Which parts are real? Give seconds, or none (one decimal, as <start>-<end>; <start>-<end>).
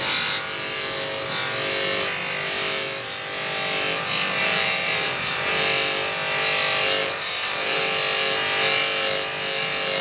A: 0.0-4.4; 5.5-7.0; 7.8-10.0